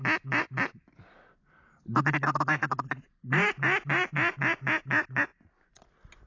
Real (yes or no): yes